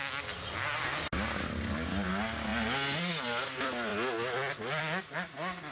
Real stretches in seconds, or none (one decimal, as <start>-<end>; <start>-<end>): 0.0-5.7